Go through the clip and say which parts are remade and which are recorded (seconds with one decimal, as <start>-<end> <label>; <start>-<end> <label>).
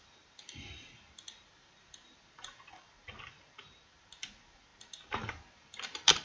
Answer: 0.0-6.2 remade